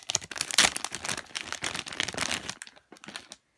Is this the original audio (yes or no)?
yes